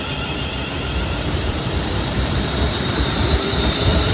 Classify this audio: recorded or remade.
remade